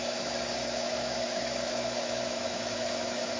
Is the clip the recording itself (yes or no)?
no